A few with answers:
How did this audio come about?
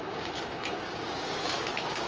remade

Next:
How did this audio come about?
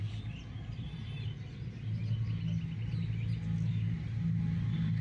recorded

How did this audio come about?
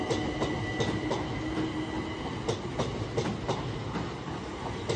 recorded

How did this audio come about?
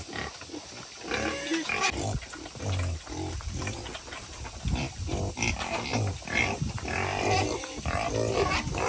recorded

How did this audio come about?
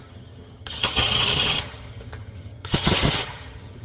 remade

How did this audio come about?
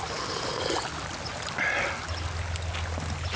recorded